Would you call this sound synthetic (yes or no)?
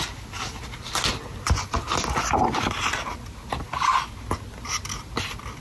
no